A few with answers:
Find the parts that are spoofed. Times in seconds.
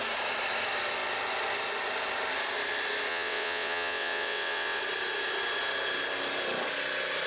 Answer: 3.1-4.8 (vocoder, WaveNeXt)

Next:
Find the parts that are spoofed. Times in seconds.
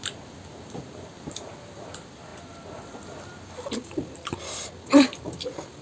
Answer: none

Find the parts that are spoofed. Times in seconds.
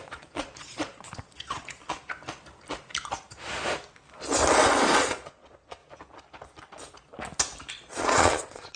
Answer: 0.0-1.8 (vocoder, Vocos); 5.0-5.8; 7.7-8.8